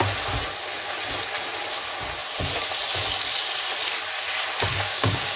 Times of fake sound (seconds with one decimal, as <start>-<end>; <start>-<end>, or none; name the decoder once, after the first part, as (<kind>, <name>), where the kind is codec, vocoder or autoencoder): 4.7-5.4 (codec, DAC)